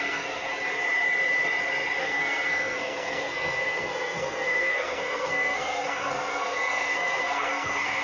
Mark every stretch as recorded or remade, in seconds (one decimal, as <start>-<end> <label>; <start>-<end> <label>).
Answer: 0.0-0.5 remade; 0.5-2.0 recorded; 2.0-8.0 remade

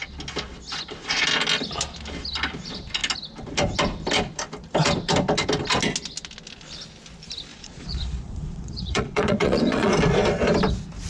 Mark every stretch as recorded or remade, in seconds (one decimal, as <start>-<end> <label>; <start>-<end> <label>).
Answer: 0.0-7.5 recorded; 7.5-9.9 remade; 9.9-11.1 recorded